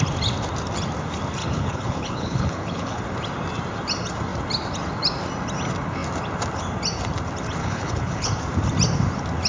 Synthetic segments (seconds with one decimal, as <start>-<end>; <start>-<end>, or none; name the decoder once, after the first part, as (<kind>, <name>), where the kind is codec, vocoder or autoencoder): 1.4-3.0 (codec, HILCodec); 7.6-8.3